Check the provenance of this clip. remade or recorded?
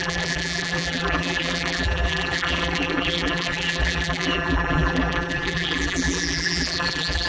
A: remade